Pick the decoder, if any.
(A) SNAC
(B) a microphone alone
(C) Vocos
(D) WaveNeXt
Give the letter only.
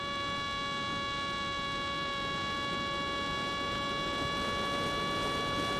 B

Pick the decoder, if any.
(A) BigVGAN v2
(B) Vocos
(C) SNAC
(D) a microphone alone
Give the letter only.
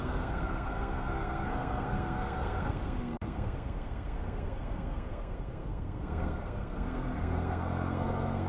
C